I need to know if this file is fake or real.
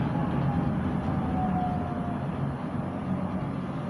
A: real